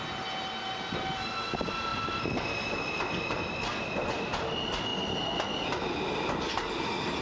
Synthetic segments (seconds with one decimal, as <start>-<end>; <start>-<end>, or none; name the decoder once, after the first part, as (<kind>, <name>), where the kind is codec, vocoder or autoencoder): none